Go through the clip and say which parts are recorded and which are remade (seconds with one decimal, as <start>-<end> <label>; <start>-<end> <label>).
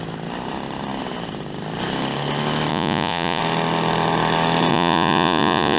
0.0-2.7 recorded; 2.7-3.4 remade; 3.4-4.7 recorded; 4.7-5.8 remade